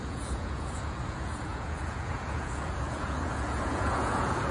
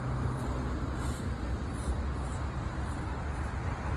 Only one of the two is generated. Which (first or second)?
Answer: first